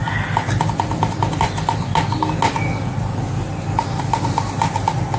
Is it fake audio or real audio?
real